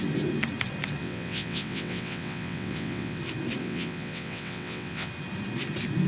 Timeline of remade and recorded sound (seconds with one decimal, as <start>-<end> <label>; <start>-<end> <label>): 0.0-1.0 recorded; 1.0-3.2 remade; 3.2-3.6 recorded; 3.6-5.1 remade; 5.1-6.1 recorded

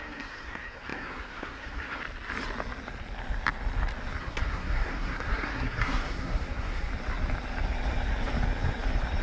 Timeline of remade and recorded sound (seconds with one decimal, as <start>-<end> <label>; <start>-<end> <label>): 0.0-2.0 remade; 2.0-4.2 recorded; 4.2-6.9 remade; 6.9-9.2 recorded

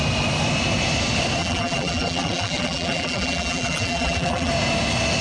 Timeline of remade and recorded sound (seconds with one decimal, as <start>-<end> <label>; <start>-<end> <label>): 0.0-1.4 recorded; 1.4-4.5 remade; 4.5-5.2 recorded

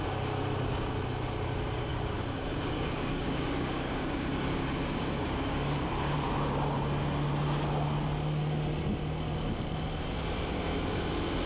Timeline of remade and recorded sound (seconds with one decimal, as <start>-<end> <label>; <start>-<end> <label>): 0.0-1.9 recorded; 1.9-5.9 remade; 5.9-11.5 recorded